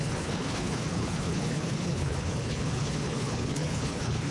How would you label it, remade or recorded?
remade